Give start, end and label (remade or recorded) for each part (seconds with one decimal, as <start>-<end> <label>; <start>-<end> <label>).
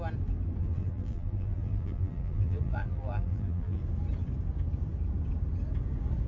0.0-0.6 recorded; 0.6-3.8 remade; 3.8-6.3 recorded